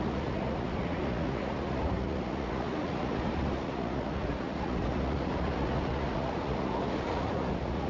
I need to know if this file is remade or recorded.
remade